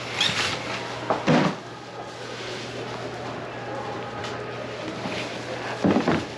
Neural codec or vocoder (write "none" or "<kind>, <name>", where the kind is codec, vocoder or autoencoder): none